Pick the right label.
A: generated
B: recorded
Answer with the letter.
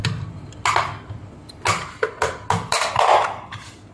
B